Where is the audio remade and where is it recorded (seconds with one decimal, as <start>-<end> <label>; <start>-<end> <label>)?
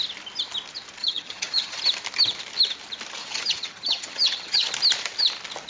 0.0-1.0 recorded; 1.0-1.8 remade; 1.8-3.2 recorded; 3.2-4.7 remade; 4.7-5.7 recorded